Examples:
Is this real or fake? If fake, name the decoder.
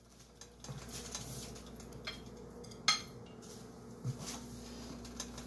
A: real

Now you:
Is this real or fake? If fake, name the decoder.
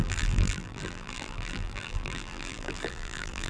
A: fake, vocoder, BigVGAN v2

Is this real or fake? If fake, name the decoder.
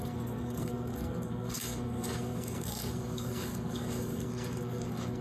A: fake, codec, SNAC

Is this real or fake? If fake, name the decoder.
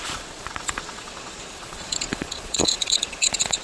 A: fake, vocoder, Vocos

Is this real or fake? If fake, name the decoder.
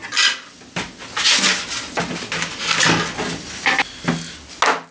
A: real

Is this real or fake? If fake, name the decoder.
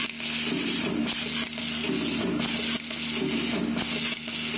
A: real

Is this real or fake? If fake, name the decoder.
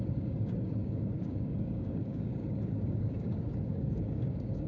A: fake, codec, DAC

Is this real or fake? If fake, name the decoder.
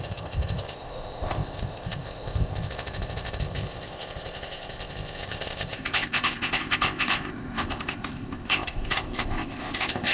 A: fake, codec, ZipCodec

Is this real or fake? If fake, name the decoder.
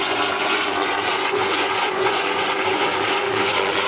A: fake, vocoder, Vocos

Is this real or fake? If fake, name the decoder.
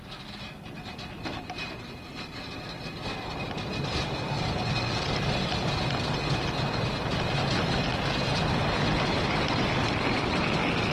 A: real